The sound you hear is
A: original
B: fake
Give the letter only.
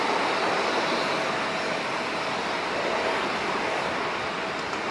A